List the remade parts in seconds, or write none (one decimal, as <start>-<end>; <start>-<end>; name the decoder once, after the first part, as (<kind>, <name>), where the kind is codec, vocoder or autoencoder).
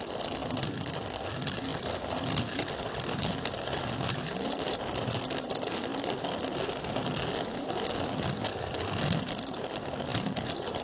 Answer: 10.1-10.8 (vocoder, BigVGAN v2)